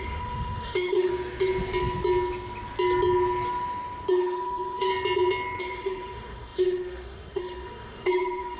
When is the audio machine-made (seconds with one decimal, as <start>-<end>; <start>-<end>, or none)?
0.0-1.1; 4.1-4.9; 5.6-8.6